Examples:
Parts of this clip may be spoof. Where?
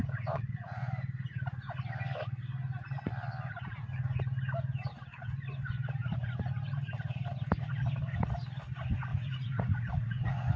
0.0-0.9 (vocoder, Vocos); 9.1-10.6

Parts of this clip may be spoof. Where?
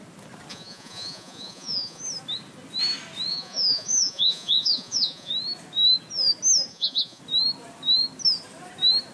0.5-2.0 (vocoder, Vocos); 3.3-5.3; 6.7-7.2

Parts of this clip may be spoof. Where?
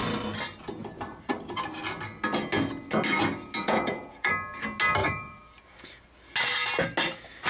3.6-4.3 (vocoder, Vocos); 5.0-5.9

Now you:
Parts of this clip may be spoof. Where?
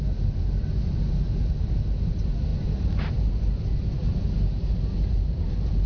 none